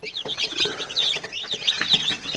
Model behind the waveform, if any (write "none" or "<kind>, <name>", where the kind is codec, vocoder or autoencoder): vocoder, WaveNeXt